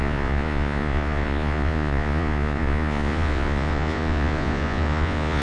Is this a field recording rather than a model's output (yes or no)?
no